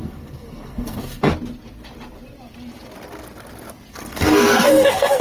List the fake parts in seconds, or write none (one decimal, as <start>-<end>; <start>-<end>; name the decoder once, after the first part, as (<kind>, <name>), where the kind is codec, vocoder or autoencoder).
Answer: 0.0-1.3 (codec, SNAC); 3.9-5.2